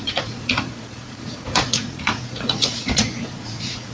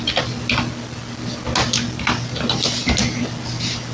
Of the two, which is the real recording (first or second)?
second